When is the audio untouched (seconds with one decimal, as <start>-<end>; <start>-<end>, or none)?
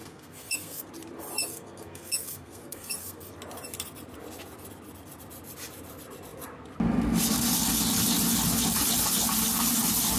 0.9-1.4; 3.3-10.2